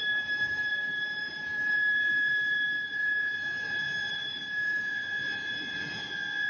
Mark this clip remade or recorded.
remade